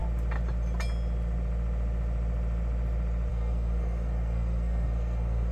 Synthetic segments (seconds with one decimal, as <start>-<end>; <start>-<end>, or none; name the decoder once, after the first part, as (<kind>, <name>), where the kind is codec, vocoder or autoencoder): 3.3-5.5 (codec, SNAC)